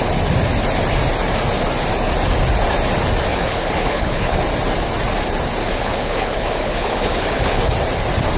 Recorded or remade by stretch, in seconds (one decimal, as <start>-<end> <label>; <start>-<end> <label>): 0.0-3.3 recorded; 3.3-4.4 remade; 4.4-5.6 recorded; 5.6-7.6 remade; 7.6-8.4 recorded